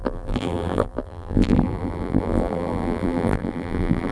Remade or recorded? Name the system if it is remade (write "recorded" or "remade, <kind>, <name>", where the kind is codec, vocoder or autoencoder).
remade, vocoder, BigVGAN v2